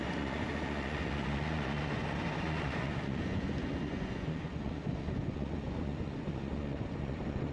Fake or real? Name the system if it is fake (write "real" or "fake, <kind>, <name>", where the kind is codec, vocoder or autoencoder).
fake, vocoder, Vocos